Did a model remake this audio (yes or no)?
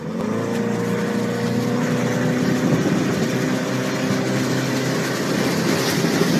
no